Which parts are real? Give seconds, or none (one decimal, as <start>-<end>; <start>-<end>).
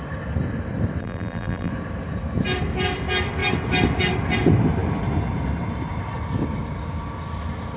0.0-1.0; 1.7-7.8